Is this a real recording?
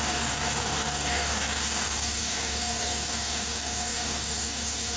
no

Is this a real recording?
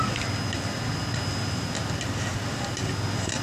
yes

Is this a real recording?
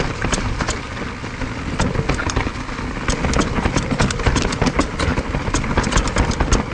yes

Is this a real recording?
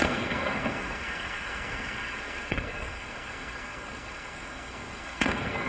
no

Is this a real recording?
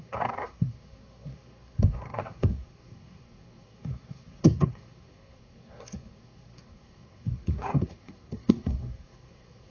no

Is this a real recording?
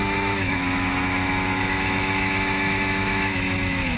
no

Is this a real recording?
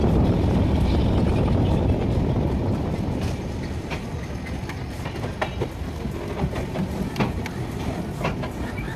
yes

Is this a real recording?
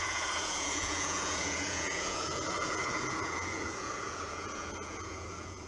no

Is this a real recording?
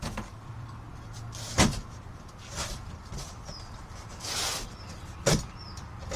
no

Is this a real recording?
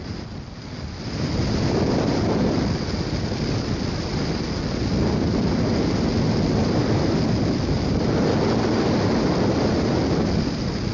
yes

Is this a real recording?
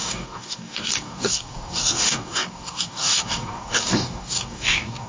no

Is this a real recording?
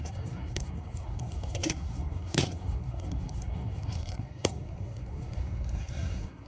no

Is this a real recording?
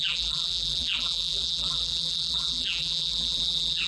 no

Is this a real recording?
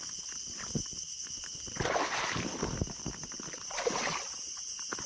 yes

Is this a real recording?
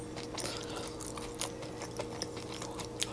yes